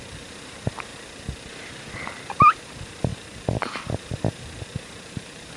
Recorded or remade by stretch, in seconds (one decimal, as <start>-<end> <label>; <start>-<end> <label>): 0.0-0.9 remade; 0.9-2.6 recorded; 2.6-5.6 remade